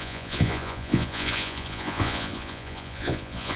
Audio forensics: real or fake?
fake